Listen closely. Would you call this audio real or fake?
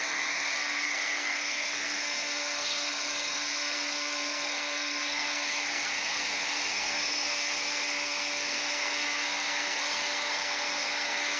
fake